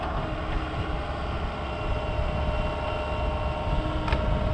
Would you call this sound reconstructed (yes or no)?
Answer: no